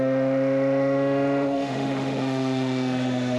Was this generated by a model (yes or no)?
yes